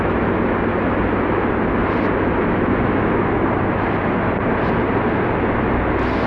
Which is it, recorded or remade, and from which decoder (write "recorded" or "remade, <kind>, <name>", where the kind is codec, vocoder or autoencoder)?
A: recorded